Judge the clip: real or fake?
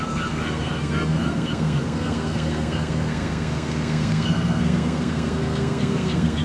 fake